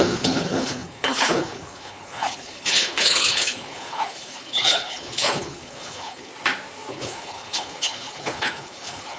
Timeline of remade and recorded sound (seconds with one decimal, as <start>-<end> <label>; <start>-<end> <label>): 0.0-6.3 remade; 6.3-6.9 recorded; 6.9-9.2 remade